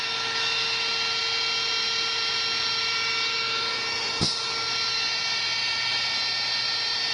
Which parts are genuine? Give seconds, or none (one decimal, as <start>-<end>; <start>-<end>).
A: 0.0-5.6; 6.2-7.1